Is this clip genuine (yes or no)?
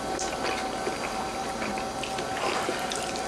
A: yes